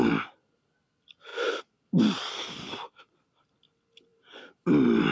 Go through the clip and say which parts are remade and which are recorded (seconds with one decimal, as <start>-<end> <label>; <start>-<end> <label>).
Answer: 0.0-5.1 recorded